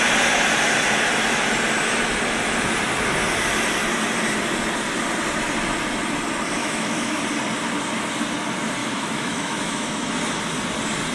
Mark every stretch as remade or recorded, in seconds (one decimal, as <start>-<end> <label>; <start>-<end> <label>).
0.0-6.6 recorded; 6.6-7.2 remade; 7.2-8.8 recorded; 8.8-10.1 remade; 10.1-11.1 recorded